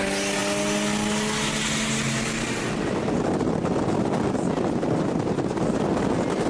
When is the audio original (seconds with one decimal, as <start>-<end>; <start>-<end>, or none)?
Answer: 0.0-6.5